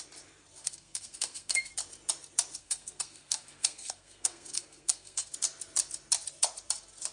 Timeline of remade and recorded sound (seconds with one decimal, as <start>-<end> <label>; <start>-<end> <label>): 0.0-0.6 recorded; 0.6-1.7 remade; 1.7-2.6 recorded; 2.6-5.3 remade; 5.3-7.1 recorded